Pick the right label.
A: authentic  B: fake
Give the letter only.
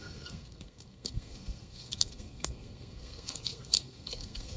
B